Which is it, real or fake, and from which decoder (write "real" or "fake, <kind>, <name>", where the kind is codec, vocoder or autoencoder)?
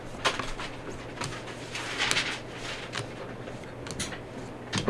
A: real